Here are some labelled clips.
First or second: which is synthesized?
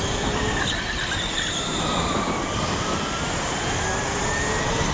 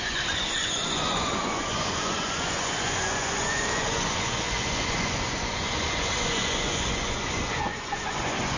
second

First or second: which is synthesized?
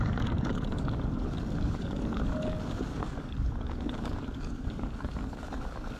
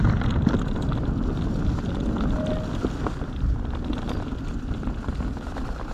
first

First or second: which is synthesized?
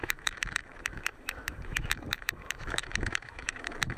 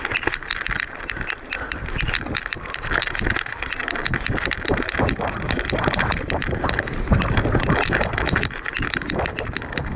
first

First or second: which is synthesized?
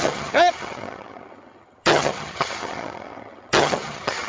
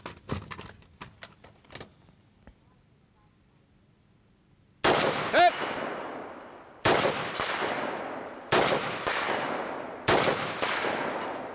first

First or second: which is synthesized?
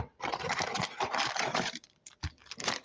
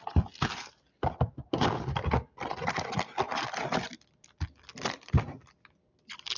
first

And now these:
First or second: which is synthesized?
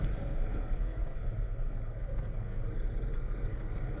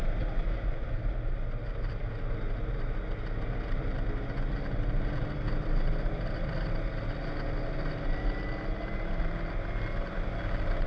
first